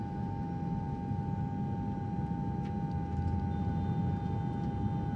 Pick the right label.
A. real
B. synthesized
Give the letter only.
A